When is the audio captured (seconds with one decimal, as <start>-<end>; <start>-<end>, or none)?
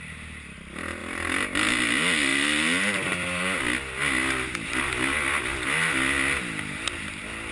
0.0-7.5